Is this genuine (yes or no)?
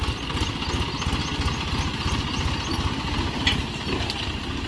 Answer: yes